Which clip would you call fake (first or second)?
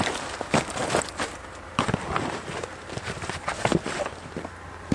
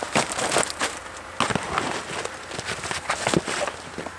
first